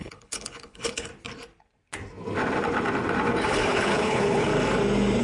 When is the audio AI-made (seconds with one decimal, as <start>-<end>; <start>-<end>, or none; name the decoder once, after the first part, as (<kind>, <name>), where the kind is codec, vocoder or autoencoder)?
0.0-1.1 (codec, HILCodec); 3.5-4.5